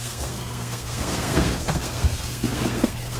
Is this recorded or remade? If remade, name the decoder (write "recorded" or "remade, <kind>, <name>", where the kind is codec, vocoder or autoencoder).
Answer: remade, codec, SNAC